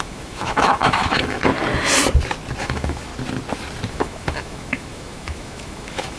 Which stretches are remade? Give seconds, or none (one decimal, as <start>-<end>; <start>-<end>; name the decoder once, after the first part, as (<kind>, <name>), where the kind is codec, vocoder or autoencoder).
0.0-1.5 (autoencoder, DAC-VAE); 2.6-3.1; 3.9-6.2